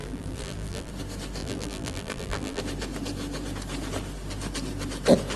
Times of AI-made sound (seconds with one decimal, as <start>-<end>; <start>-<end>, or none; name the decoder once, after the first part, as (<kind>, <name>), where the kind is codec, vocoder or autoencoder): 0.0-0.9 (vocoder, BigVGAN v2); 1.4-2.6